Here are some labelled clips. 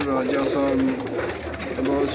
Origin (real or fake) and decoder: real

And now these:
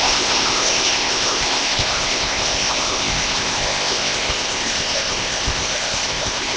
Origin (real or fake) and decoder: fake, codec, ZipCodec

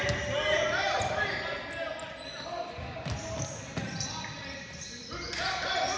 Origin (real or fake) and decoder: real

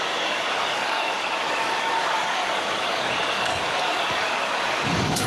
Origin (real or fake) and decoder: fake, codec, DAC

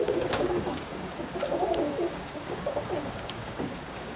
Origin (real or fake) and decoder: fake, codec, DAC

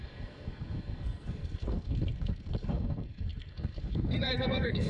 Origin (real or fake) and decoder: fake, codec, SNAC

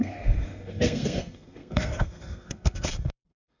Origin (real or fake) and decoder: fake, codec, SNAC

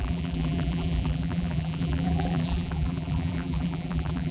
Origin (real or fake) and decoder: fake, vocoder, BigVGAN v2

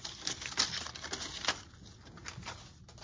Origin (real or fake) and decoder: real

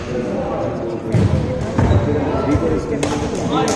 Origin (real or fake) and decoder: real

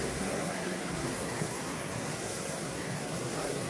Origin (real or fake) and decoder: fake, codec, SNAC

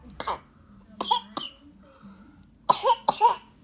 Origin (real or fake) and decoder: real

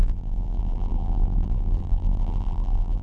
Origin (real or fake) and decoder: fake, vocoder, BigVGAN v2